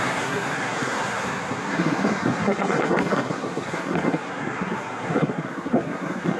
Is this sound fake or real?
fake